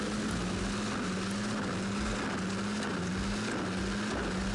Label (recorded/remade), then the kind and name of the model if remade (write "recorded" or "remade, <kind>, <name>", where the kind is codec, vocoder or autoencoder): recorded